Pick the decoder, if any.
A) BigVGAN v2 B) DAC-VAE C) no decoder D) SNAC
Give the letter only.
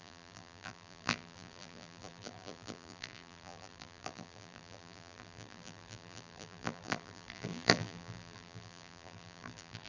A